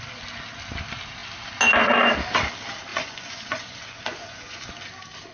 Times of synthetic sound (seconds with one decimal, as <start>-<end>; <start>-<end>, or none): 2.9-4.7